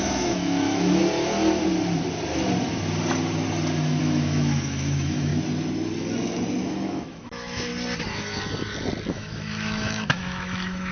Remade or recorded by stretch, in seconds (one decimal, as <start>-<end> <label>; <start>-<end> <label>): 0.0-1.0 remade; 1.0-4.0 recorded; 4.0-5.3 remade; 5.3-6.6 recorded; 6.6-7.7 remade; 7.7-9.1 recorded; 9.1-10.9 remade